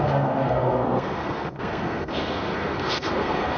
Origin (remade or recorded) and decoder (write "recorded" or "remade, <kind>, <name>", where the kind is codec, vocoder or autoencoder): remade, codec, SNAC